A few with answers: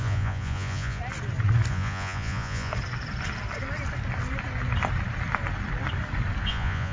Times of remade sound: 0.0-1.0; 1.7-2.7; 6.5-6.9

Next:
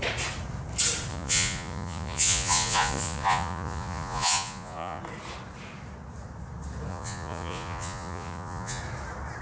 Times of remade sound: 1.1-5.0; 6.9-8.8